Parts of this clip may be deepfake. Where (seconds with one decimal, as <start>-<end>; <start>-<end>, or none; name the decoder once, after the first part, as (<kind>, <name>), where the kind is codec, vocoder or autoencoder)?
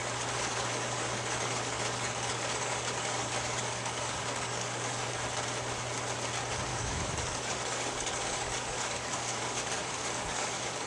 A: 0.0-5.2 (codec, DAC); 6.7-10.9